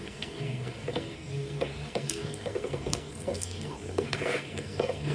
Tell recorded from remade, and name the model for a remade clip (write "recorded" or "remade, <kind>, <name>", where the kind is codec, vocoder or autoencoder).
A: remade, codec, SNAC